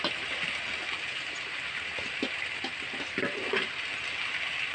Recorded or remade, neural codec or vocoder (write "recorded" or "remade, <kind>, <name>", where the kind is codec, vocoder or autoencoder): recorded